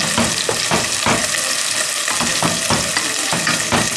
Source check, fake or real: real